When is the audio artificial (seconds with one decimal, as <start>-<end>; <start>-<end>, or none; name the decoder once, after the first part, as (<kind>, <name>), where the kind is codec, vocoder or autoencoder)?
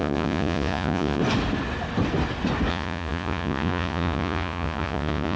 0.0-1.2 (vocoder, Vocos); 2.7-5.4